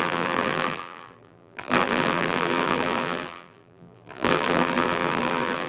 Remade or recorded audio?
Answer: remade